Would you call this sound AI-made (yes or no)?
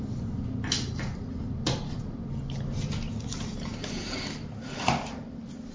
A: no